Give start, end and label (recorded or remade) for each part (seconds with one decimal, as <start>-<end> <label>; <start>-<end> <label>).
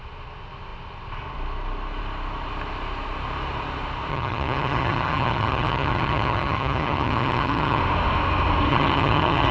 0.0-4.1 recorded; 4.1-7.8 remade; 7.8-8.7 recorded; 8.7-9.5 remade